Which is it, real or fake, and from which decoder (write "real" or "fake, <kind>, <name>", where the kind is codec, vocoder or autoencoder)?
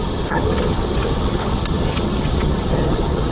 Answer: fake, vocoder, HiFi-GAN